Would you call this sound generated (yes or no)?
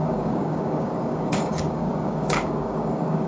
yes